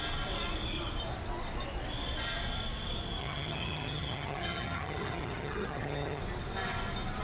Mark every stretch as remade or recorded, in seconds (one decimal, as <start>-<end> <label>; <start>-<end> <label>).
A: 0.0-3.2 recorded; 3.2-6.2 remade; 6.2-7.2 recorded